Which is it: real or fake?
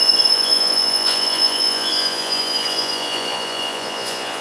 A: fake